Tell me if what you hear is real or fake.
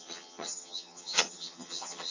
fake